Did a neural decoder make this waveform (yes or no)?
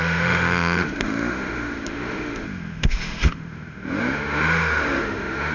yes